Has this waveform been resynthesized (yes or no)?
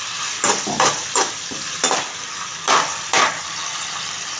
no